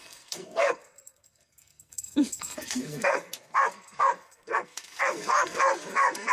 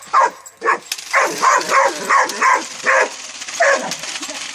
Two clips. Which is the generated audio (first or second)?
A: first